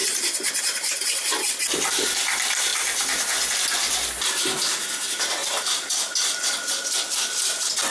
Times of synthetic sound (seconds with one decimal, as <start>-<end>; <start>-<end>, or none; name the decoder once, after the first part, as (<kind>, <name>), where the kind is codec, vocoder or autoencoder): none